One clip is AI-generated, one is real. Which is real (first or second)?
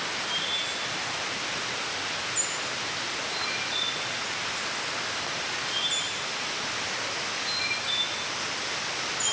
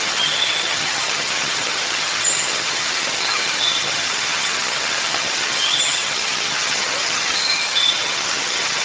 first